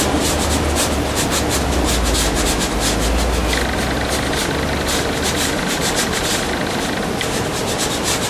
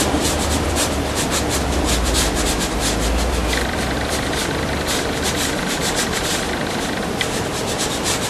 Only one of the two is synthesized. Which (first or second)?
second